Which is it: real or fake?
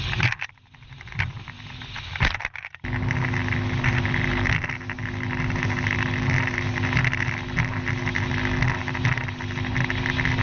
real